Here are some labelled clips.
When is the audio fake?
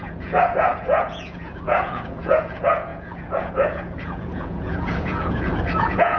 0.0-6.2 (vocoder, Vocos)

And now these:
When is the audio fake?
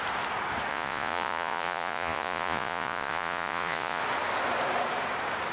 0.7-4.0 (vocoder, Vocos)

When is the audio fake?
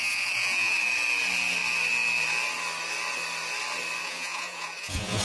0.0-0.8 (vocoder, Vocos); 4.0-5.2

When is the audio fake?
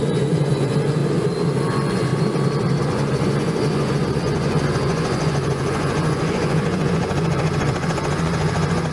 0.0-1.0 (vocoder, Vocos); 1.6-2.1; 2.8-8.9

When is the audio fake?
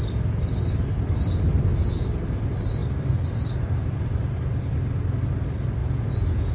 5.8-6.5 (vocoder, Vocos)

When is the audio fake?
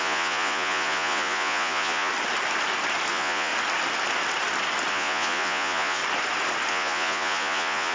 0.0-2.1 (vocoder, Vocos); 3.1-3.5; 4.9-6.0; 6.7-7.9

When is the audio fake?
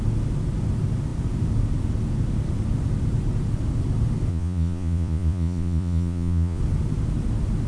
4.3-6.6 (vocoder, Vocos)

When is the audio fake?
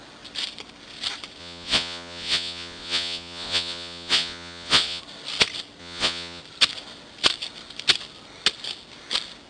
1.4-5.0 (vocoder, Vocos); 5.8-6.4